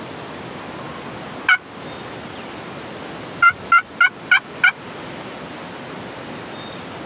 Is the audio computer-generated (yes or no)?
no